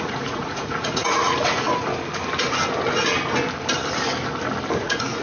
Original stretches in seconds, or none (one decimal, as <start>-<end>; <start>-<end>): 1.7-4.8